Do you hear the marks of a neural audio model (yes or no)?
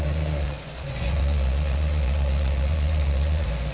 yes